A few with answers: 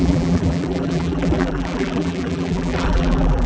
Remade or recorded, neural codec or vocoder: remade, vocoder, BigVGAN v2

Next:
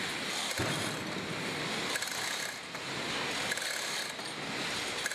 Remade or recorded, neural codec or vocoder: recorded